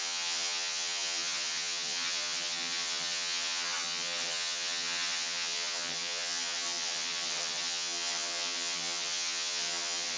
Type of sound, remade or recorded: remade